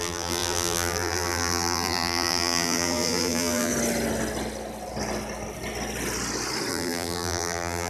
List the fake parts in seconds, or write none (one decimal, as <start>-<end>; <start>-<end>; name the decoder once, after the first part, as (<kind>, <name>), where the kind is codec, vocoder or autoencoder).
0.0-3.7 (vocoder, BigVGAN v2); 6.7-7.9